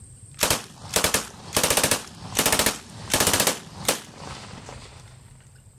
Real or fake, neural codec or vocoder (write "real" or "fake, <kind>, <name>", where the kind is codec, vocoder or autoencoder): fake, vocoder, BigVGAN v2